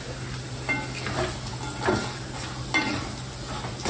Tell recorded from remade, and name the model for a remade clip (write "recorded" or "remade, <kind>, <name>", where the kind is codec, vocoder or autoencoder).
recorded